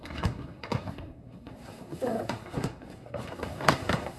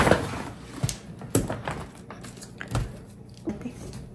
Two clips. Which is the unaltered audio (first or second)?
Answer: second